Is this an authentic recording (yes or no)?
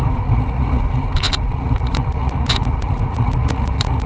no